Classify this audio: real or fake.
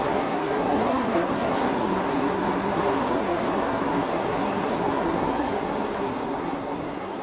fake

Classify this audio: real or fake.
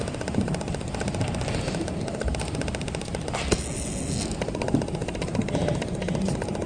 real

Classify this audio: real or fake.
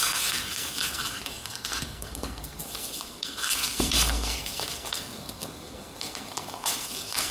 fake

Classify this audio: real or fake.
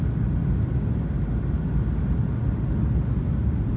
real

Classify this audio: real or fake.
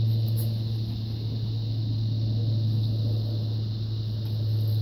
real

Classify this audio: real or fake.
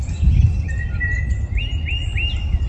real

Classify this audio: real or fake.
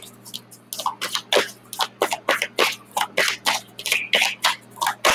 real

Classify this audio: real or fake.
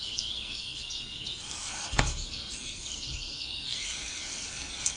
fake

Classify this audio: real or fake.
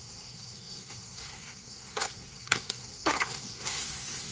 fake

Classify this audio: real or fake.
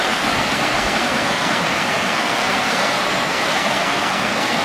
fake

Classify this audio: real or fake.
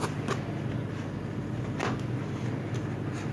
real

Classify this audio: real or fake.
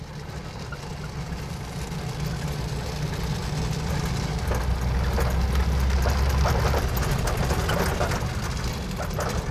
real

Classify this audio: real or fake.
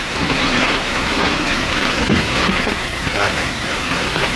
fake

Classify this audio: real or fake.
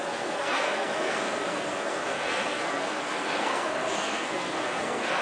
fake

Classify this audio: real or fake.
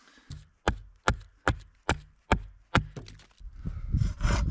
real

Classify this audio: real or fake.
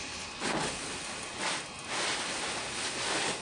real